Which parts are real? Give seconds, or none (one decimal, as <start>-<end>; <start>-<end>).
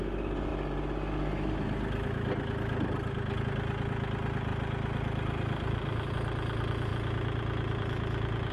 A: 0.0-6.9